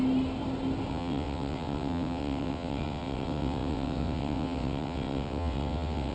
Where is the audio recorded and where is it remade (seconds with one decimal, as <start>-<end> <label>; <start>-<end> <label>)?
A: 0.0-0.9 recorded; 0.9-6.1 remade